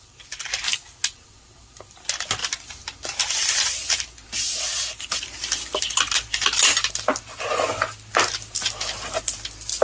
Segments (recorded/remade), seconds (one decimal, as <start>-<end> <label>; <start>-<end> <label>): 0.0-9.8 recorded